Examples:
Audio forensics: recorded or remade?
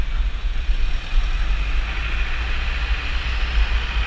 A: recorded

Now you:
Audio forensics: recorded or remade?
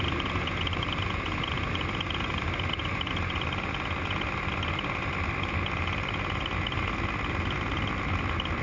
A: recorded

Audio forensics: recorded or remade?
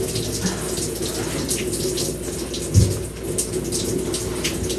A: recorded